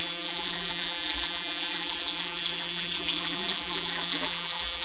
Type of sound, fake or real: fake